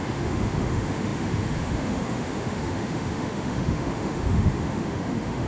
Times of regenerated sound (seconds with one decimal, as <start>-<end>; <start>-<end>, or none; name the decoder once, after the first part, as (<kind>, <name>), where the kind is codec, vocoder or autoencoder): 0.0-5.5 (autoencoder, DAC-VAE)